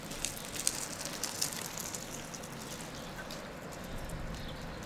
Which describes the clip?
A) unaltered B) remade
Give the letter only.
A